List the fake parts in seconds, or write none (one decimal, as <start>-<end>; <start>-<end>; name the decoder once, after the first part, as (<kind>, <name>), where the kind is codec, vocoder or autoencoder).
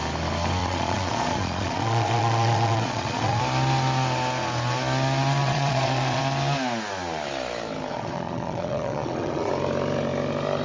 0.6-3.4 (vocoder, Vocos); 5.4-6.2; 7.9-9.5